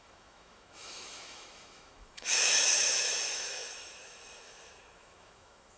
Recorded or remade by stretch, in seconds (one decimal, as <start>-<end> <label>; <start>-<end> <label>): 0.0-5.8 remade